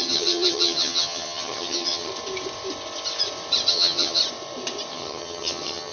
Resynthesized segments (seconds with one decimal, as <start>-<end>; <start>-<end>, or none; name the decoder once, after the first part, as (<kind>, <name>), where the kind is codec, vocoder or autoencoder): 0.0-2.1 (vocoder, HiFi-GAN); 3.7-4.2; 4.9-5.9